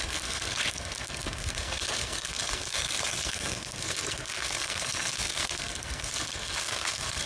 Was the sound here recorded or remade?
remade